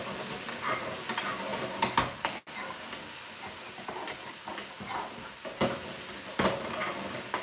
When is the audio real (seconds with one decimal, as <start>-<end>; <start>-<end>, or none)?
0.0-7.4